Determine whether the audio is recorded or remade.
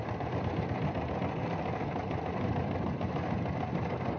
remade